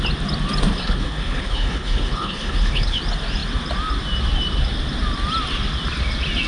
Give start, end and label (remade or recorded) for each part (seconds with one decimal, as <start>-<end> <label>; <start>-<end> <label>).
0.0-0.7 recorded; 0.7-3.0 remade; 3.0-6.5 recorded

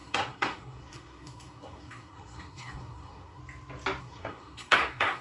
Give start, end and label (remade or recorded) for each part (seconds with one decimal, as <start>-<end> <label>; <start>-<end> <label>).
0.0-3.4 remade; 3.4-4.0 recorded; 4.0-5.2 remade

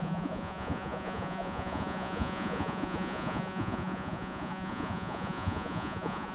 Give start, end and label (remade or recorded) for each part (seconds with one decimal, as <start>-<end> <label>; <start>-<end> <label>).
0.0-6.3 remade